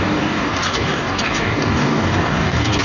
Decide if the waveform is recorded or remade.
remade